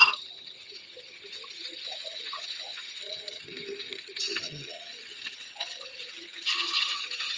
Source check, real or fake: fake